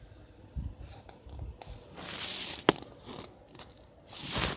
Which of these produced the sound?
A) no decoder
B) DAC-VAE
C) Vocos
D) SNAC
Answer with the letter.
A